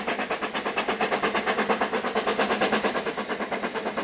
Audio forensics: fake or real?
real